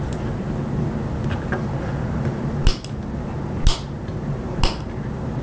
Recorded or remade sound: recorded